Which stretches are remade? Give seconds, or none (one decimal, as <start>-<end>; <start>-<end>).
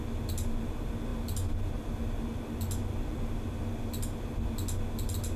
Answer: none